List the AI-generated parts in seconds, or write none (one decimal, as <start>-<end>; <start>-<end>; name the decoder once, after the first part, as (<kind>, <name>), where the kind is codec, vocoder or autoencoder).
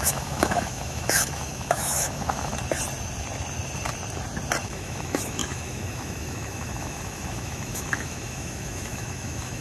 0.0-2.5 (autoencoder, DAC-VAE); 4.6-9.6